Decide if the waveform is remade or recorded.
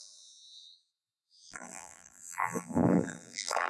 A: remade